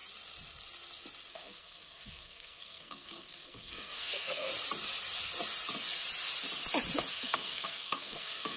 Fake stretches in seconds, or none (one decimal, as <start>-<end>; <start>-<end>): 1.3-4.5; 7.1-8.6